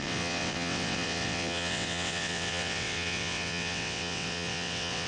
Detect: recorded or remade remade